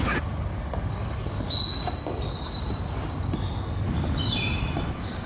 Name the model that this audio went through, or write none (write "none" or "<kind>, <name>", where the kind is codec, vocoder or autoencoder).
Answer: none